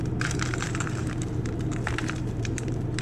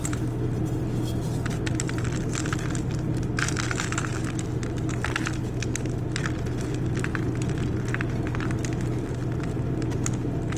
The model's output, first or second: first